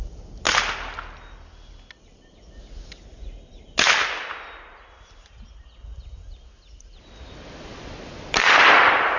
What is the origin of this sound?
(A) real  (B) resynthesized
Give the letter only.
A